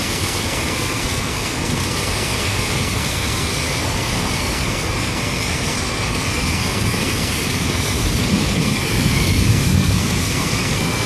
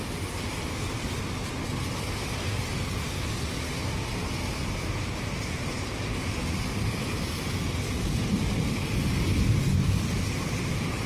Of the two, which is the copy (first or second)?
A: first